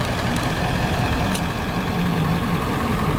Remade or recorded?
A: remade